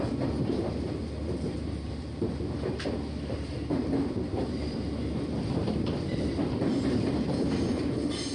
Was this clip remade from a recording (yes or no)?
yes